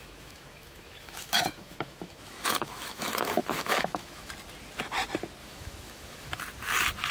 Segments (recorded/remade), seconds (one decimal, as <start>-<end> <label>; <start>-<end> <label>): 0.0-4.3 remade; 4.3-5.4 recorded; 5.4-6.4 remade; 6.4-7.1 recorded